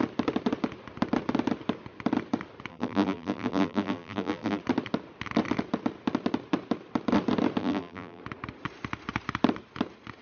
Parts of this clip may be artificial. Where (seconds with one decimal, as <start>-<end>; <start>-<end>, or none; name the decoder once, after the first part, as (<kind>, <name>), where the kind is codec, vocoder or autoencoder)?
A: 2.7-4.6 (vocoder, BigVGAN v2); 7.6-8.2